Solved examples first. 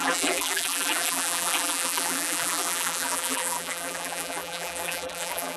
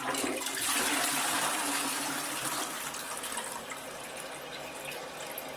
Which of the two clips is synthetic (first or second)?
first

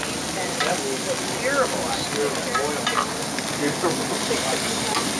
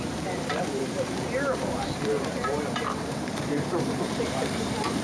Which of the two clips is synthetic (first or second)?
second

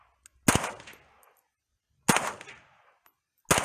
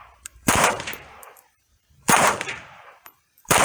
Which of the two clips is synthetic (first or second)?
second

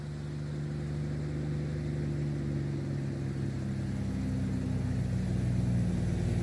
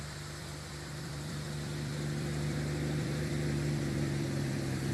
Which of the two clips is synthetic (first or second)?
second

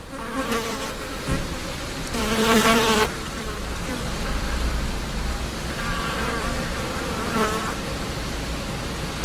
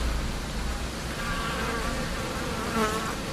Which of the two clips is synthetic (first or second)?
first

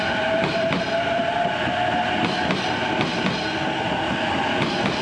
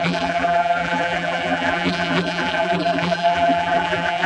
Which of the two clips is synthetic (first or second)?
second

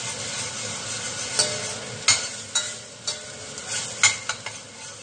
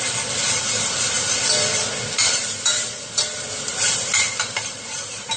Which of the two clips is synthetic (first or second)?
second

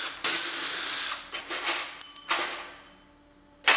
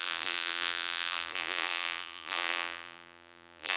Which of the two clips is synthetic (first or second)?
second